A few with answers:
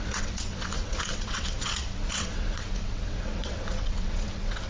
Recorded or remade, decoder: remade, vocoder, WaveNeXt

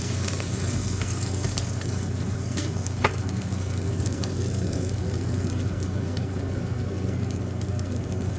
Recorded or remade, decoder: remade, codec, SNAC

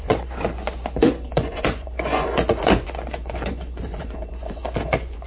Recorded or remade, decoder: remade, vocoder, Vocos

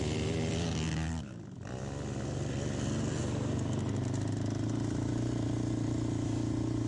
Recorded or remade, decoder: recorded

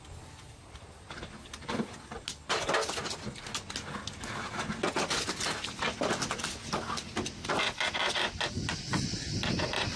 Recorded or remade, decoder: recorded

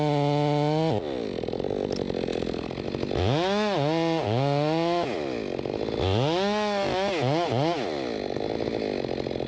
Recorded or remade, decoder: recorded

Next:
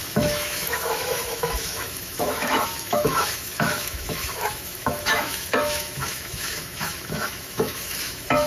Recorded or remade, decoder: remade, autoencoder, DAC-VAE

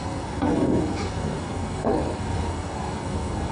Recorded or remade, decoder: remade, codec, SNAC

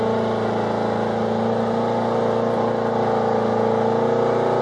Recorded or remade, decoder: recorded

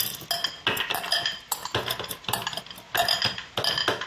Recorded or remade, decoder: recorded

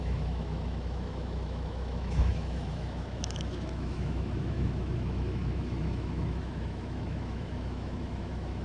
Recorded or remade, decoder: remade, autoencoder, DAC-VAE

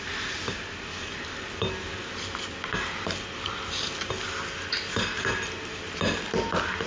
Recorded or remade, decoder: recorded